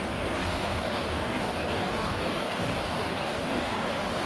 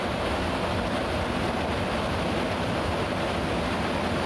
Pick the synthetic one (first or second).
first